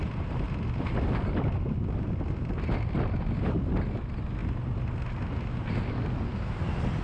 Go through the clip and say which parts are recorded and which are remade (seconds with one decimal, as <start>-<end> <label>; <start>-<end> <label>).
0.0-7.0 recorded